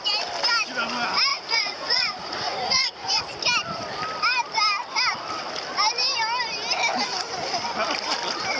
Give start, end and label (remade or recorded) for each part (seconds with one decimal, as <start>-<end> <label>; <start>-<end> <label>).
0.0-1.3 recorded; 1.3-3.2 remade; 3.2-8.6 recorded